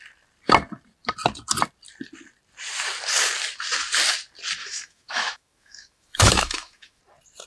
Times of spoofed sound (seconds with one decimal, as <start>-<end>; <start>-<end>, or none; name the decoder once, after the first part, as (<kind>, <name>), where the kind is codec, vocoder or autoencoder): 4.6-7.0 (autoencoder, DAC-VAE)